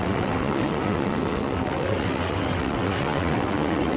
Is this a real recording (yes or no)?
no